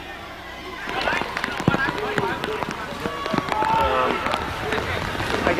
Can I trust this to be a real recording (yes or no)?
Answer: yes